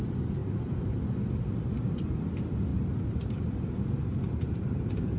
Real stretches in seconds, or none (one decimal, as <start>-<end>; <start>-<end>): 0.0-0.4; 1.2-2.7; 3.4-4.1